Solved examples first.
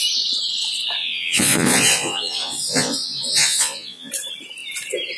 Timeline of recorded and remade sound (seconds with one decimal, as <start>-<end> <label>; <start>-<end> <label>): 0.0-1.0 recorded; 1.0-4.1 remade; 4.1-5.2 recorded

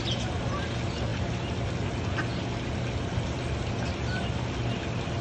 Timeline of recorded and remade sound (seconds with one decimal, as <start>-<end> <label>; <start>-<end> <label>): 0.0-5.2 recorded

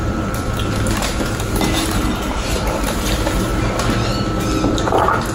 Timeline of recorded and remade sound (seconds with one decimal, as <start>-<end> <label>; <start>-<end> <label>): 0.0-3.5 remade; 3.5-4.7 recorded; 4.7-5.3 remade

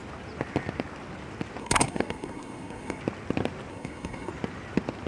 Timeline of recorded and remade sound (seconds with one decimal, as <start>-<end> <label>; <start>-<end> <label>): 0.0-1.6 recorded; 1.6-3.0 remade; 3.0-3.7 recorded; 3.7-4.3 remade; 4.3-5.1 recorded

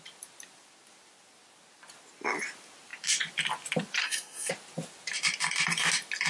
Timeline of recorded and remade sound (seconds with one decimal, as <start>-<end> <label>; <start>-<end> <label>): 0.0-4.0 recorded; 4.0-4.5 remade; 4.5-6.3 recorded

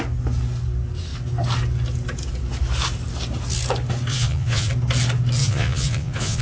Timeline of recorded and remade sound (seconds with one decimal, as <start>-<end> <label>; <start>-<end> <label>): 0.0-4.1 recorded; 4.1-4.7 remade; 4.7-5.4 recorded; 5.4-6.4 remade

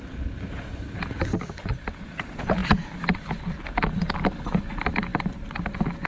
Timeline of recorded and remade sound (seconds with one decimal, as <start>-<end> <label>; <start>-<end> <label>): 0.0-6.1 recorded